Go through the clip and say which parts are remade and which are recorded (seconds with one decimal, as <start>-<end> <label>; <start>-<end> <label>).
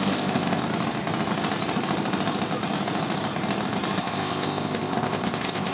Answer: 0.0-0.6 remade; 0.6-4.0 recorded; 4.0-5.7 remade